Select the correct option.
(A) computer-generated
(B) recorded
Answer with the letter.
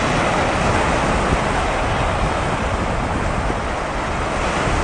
B